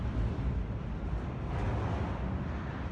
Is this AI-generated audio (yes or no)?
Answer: no